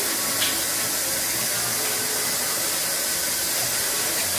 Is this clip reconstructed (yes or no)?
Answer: no